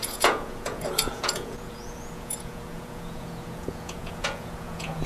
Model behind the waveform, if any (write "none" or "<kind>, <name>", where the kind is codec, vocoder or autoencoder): vocoder, Vocos